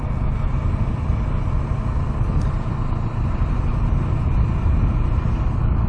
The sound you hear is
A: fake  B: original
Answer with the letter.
B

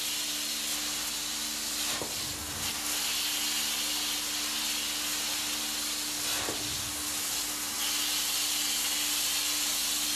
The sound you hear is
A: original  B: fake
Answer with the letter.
A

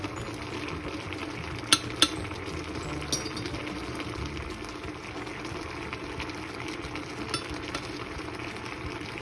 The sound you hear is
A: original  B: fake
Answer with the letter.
A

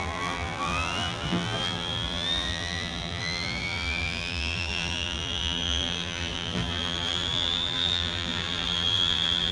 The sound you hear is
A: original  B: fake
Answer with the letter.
B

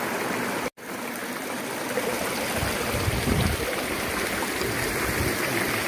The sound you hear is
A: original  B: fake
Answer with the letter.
A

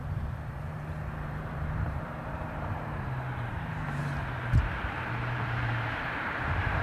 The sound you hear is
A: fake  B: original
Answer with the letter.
A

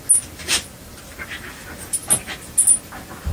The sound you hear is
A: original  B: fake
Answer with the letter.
A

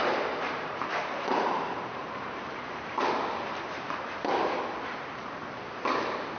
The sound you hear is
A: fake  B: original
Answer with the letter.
A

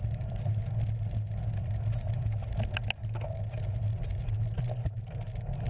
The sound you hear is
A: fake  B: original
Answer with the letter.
B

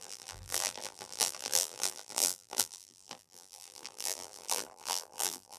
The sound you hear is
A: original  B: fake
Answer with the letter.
B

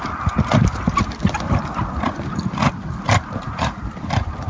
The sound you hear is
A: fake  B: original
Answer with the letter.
A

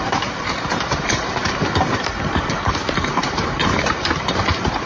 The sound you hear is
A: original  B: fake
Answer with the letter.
B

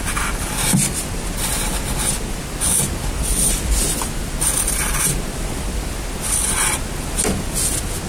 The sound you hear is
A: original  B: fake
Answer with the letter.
A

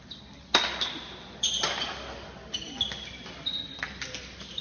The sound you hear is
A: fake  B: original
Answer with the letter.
B